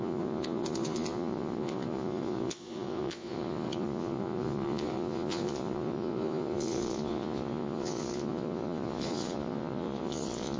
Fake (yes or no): yes